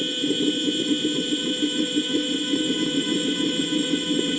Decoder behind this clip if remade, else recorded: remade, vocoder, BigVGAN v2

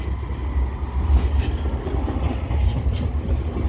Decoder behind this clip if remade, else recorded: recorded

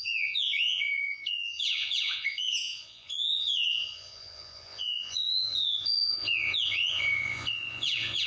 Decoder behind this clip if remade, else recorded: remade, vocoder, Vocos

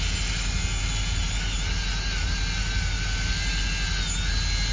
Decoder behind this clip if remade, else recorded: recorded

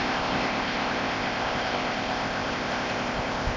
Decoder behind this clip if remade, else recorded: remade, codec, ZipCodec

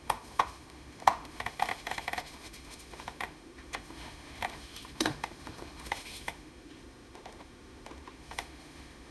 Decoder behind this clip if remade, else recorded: remade, autoencoder, DAC-VAE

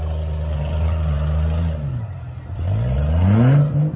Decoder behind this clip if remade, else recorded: recorded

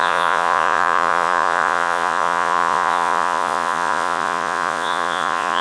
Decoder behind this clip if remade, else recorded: remade, vocoder, Vocos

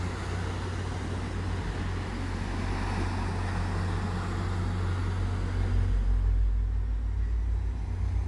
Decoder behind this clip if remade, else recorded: recorded